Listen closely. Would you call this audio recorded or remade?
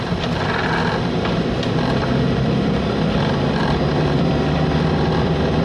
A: remade